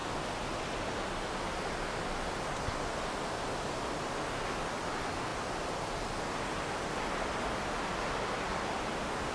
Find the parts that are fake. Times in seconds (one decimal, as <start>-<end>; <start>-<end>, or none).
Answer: none